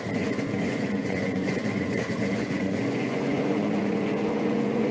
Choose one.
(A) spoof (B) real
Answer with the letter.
A